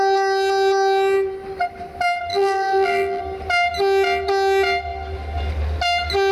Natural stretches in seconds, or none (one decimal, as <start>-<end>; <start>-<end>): 0.0-2.3; 3.2-6.3